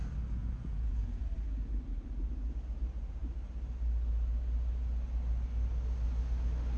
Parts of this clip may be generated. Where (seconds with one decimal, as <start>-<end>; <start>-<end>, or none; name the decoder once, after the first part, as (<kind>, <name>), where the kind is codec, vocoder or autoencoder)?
0.4-1.2 (vocoder, Vocos)